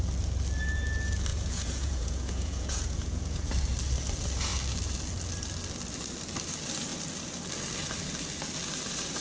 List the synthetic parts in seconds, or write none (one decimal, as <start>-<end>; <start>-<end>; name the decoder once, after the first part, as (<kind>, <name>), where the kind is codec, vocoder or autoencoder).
1.3-3.5 (vocoder, Vocos)